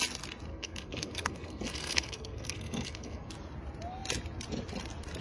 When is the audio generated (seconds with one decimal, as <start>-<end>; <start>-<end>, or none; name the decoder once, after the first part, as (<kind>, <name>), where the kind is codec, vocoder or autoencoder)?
0.5-3.3 (codec, SNAC)